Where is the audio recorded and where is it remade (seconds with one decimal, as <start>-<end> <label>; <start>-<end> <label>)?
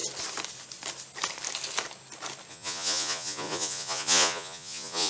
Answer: 0.0-2.5 recorded; 2.5-5.1 remade